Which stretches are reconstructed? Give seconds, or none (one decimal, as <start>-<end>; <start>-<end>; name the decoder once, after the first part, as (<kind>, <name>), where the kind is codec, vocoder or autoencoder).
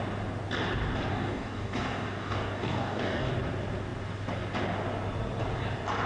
1.1-3.3 (codec, DAC)